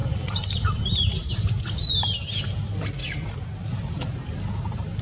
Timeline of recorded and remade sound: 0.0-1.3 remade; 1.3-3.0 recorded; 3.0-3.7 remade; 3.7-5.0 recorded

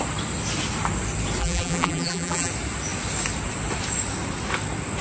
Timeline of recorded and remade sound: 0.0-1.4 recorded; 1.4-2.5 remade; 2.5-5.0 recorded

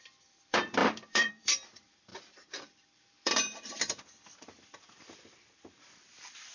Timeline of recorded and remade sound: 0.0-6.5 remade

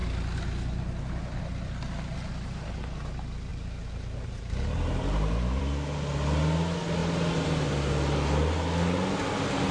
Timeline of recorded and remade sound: 0.0-3.5 recorded; 3.5-5.6 remade; 5.6-9.7 recorded